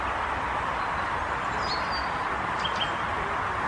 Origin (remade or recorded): recorded